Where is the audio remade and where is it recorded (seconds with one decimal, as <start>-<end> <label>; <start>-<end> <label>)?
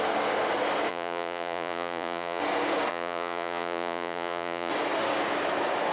0.0-0.9 recorded; 0.9-2.4 remade; 2.4-2.9 recorded; 2.9-4.7 remade; 4.7-5.9 recorded